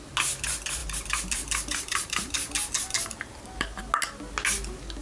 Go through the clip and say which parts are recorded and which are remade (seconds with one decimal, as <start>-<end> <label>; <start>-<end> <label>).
0.0-0.8 recorded; 0.8-3.8 remade; 3.8-5.0 recorded